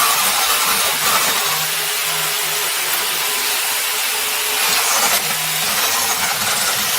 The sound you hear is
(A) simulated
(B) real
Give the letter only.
B